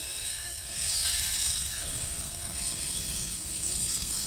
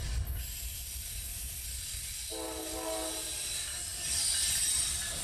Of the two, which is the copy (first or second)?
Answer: first